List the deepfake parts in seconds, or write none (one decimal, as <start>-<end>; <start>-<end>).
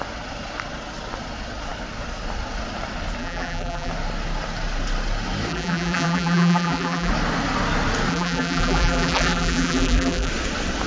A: 3.2-3.9; 5.5-7.1; 8.1-10.3